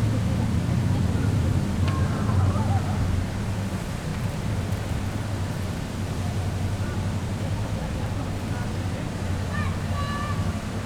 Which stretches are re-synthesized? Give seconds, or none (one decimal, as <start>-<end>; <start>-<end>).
4.1-8.4